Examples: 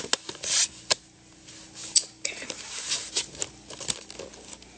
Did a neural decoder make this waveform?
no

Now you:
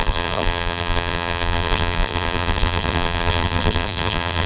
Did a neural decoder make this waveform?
yes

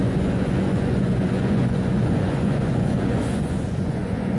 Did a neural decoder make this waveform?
yes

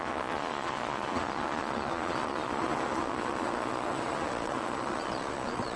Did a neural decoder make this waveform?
yes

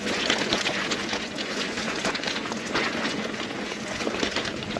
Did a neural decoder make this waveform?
yes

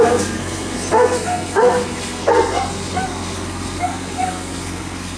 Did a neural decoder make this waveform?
yes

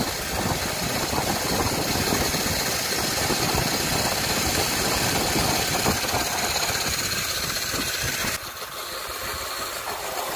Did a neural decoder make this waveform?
no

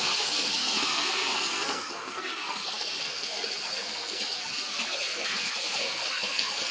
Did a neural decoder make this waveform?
yes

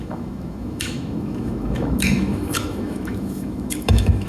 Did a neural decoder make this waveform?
yes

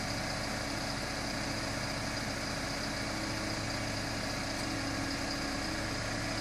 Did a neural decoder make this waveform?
no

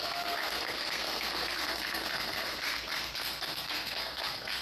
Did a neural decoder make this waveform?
yes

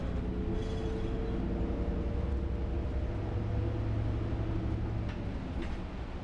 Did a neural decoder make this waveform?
no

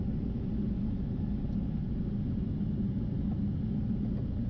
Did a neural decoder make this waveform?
no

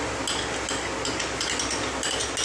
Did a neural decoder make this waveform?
no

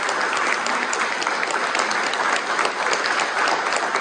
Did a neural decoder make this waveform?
no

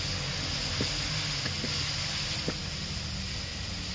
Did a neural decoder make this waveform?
no